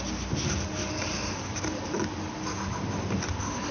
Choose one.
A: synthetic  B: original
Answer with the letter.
A